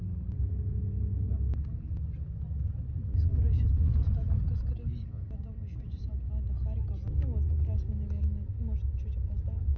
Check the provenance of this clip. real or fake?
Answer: real